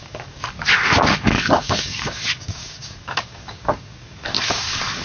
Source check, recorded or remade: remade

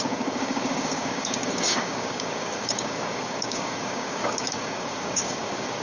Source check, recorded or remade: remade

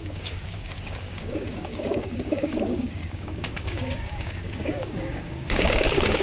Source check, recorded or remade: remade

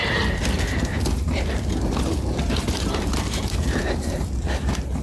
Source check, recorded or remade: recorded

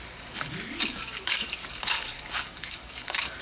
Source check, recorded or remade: remade